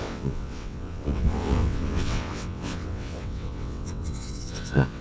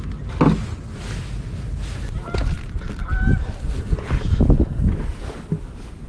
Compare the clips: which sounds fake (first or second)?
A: first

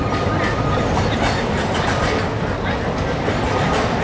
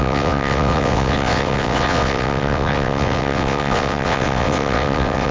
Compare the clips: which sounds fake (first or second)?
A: second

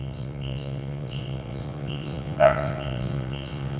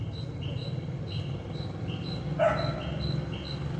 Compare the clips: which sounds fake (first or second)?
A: first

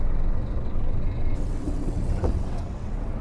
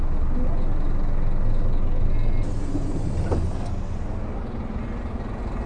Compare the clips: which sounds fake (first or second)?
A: first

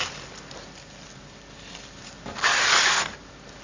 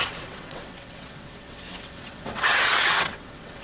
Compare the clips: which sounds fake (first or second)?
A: second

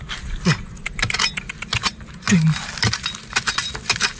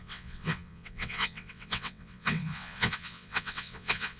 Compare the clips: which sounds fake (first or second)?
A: second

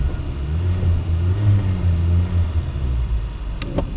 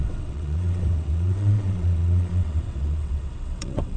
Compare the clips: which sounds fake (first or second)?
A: second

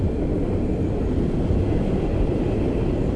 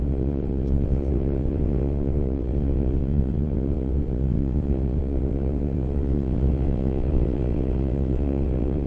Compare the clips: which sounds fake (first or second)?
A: second